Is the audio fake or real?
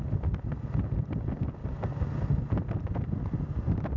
real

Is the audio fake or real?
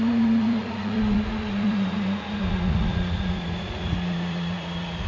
fake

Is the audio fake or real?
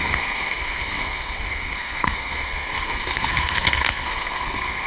fake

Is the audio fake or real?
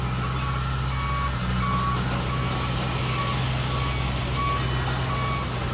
real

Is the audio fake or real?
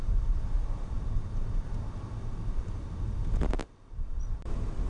real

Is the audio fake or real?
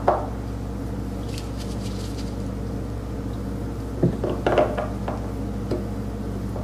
real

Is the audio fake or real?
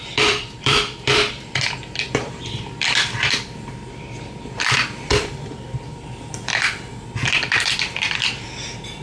fake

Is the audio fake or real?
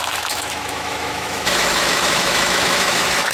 fake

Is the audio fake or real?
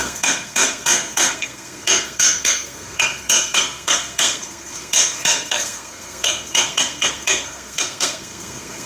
fake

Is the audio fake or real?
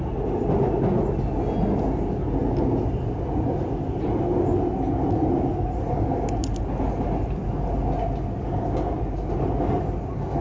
real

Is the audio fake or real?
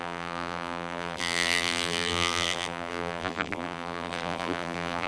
fake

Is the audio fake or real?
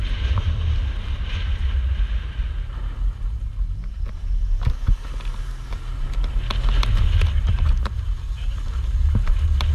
real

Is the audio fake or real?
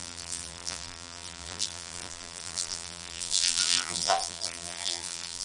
fake